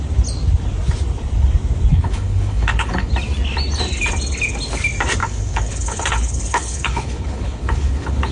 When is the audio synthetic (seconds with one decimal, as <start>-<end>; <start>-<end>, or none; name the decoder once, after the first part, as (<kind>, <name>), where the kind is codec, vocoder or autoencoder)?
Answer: 1.9-3.1 (codec, HILCodec); 5.2-8.3